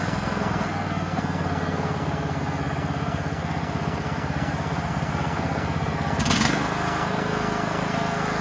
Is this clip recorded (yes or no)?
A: no